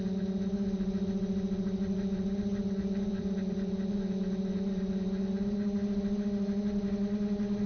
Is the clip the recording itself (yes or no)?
no